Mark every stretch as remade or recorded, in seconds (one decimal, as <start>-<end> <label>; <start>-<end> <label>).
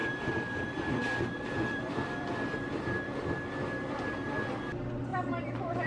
0.0-3.5 remade; 3.5-5.1 recorded; 5.1-5.9 remade